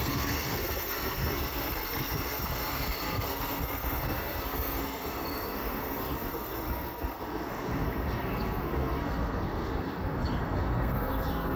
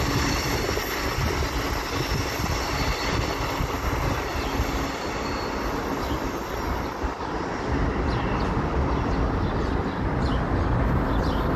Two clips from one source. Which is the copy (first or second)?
first